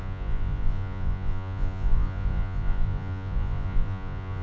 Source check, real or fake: fake